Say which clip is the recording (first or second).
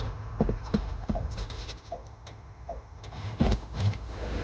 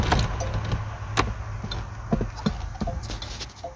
second